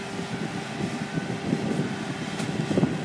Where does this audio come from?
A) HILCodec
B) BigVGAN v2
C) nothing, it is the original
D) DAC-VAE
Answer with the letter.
C